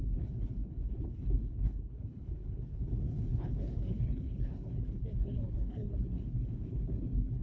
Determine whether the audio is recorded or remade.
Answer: remade